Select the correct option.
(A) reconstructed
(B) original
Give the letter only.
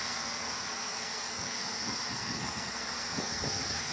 A